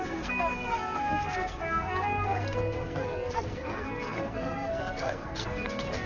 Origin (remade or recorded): remade